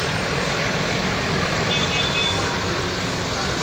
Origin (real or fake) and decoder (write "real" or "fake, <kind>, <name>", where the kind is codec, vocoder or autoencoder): real